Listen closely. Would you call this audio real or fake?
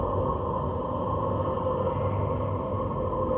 real